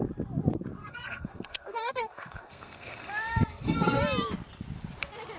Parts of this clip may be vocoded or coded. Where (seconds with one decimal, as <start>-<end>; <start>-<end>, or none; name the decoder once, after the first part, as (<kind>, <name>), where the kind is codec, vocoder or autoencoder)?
0.8-4.0 (codec, SNAC)